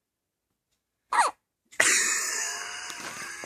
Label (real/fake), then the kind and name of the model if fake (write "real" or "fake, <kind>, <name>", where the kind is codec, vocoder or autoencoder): real